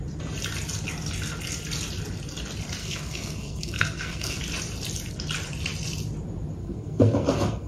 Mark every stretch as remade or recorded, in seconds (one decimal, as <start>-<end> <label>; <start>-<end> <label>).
0.0-2.8 recorded; 2.8-4.4 remade; 4.4-6.6 recorded; 6.6-7.7 remade